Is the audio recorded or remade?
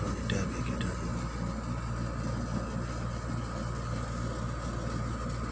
recorded